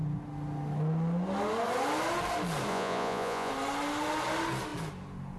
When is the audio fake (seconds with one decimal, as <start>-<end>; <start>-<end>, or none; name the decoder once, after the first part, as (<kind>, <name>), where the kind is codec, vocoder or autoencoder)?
2.7-3.5 (vocoder, Vocos)